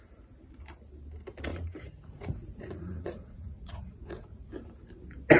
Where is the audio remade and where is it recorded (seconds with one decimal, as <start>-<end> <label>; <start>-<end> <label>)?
0.0-1.5 recorded; 1.5-4.5 remade; 4.5-5.4 recorded